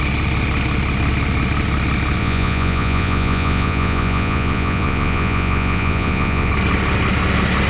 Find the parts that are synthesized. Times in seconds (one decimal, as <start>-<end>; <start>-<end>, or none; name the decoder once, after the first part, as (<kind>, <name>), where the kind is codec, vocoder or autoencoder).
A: 2.2-6.5 (vocoder, Vocos)